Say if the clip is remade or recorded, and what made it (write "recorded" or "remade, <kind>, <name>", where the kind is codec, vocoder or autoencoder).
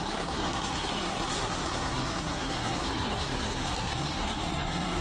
remade, codec, SNAC